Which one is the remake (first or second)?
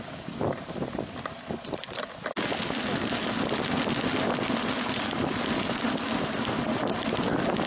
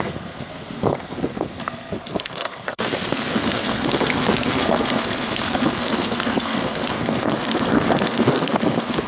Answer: second